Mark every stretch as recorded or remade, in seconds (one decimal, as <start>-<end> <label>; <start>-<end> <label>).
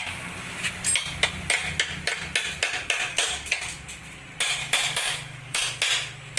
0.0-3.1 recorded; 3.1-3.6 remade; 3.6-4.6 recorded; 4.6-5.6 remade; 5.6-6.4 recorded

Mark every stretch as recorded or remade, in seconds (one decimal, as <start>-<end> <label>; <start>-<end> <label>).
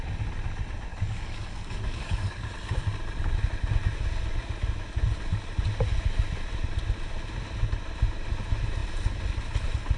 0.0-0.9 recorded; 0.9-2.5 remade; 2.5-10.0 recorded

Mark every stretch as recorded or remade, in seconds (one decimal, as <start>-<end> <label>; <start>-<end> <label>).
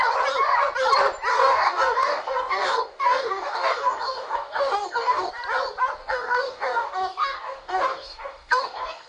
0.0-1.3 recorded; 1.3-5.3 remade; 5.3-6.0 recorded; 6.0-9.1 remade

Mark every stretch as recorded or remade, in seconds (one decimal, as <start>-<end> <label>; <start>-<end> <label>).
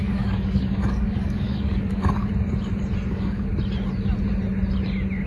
0.0-2.3 remade; 2.3-3.1 recorded; 3.1-3.5 remade; 3.5-5.3 recorded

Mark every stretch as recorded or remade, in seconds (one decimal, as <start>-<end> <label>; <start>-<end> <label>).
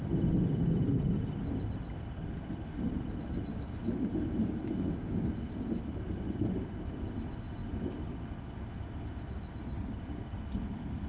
0.0-3.5 recorded; 3.5-5.7 remade; 5.7-11.1 recorded